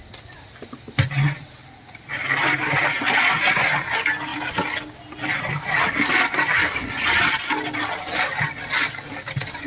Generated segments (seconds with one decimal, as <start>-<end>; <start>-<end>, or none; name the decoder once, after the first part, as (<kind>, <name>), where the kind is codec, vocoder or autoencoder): none

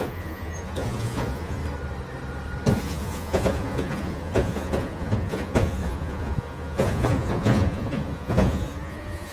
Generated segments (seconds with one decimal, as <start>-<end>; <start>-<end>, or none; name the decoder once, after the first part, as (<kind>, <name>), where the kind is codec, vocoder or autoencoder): 0.0-1.6 (vocoder, Vocos); 2.8-9.3

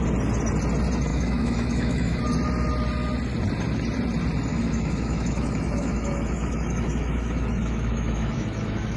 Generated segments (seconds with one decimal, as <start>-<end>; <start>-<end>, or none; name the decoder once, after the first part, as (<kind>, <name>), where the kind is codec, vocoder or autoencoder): 1.1-2.2 (autoencoder, DAC-VAE); 4.5-9.0

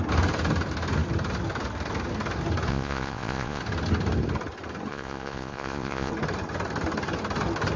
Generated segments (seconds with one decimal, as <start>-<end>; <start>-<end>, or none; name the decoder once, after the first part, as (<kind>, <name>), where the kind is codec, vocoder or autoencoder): 2.7-3.6 (vocoder, Vocos); 4.9-6.1